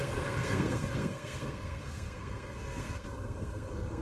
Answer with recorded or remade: remade